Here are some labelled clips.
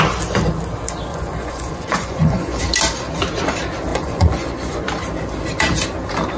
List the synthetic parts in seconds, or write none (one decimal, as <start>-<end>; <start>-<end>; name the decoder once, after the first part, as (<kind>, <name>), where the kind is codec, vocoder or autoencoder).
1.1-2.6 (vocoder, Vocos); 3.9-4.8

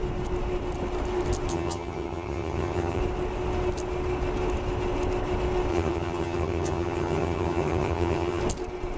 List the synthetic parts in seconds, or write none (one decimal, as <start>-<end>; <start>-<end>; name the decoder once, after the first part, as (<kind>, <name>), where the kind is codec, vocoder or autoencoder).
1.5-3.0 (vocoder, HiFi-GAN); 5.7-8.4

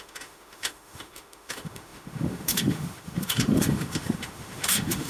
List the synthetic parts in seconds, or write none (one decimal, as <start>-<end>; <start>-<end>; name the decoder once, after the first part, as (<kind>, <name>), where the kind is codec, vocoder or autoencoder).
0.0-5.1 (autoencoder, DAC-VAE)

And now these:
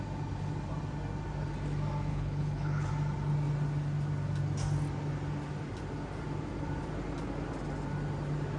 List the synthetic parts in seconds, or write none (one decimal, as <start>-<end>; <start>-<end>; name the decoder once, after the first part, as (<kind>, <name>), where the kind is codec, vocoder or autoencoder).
2.1-2.9 (codec, HILCodec)

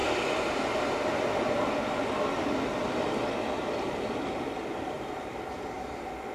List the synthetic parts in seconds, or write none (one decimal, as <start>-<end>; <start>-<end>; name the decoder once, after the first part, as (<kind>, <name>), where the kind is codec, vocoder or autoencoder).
none